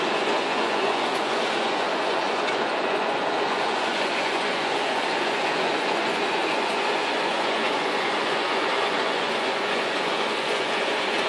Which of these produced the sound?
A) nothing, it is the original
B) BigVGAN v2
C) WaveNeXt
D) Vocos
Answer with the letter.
D